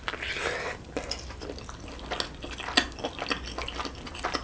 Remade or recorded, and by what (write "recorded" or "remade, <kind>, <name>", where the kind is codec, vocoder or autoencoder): recorded